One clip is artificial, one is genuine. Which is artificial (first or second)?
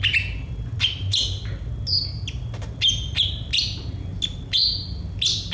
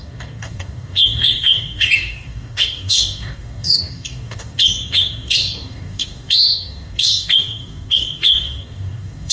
second